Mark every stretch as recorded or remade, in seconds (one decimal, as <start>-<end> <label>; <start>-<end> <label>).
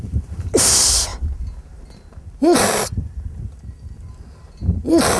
0.0-5.2 recorded